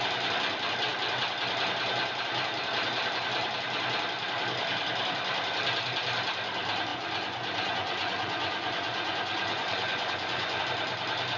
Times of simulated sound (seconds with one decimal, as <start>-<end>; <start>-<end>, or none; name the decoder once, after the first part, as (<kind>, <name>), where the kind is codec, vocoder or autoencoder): 6.9-10.6 (vocoder, Vocos)